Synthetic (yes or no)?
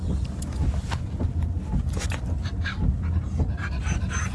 no